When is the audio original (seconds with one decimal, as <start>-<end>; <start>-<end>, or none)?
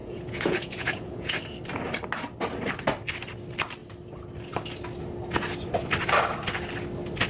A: 1.3-7.3